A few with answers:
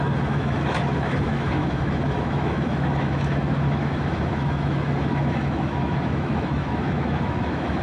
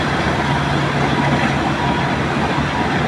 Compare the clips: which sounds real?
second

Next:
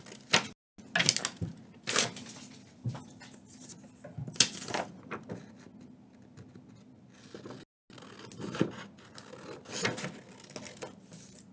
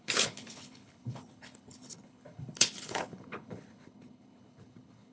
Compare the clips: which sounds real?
first